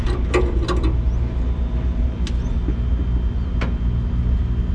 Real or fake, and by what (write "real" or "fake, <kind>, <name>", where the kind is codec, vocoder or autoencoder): real